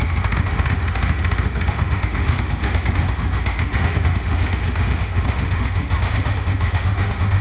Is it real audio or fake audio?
fake